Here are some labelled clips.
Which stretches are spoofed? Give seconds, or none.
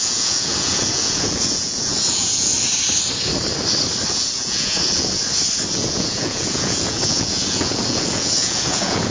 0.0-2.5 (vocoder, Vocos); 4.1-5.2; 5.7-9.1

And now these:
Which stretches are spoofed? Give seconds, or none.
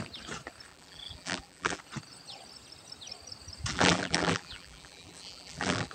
0.7-1.8 (vocoder, BigVGAN v2); 3.7-5.9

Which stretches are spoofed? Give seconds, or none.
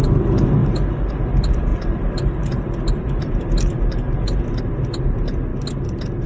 0.6-1.1 (vocoder, BigVGAN v2); 1.7-4.4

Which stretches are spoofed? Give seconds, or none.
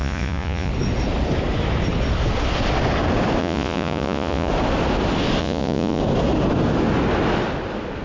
0.0-0.7 (vocoder, Vocos); 3.4-4.5; 5.4-6.0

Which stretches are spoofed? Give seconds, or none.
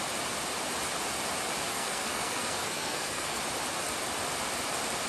1.7-3.4 (codec, SNAC)